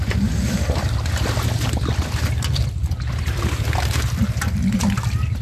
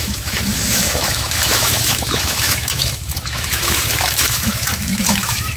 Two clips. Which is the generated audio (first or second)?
second